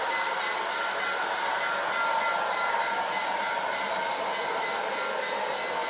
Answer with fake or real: real